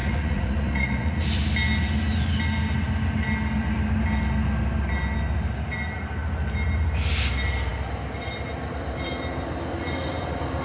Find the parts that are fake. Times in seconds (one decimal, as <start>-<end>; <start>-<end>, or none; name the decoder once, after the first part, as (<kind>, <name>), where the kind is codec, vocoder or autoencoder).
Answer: 0.0-1.2 (vocoder, Vocos)